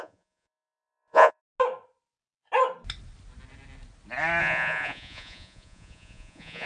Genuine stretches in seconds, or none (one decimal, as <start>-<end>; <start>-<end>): 1.4-4.4